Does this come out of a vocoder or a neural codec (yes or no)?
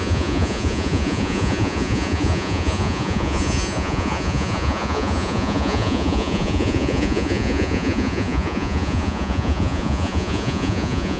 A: yes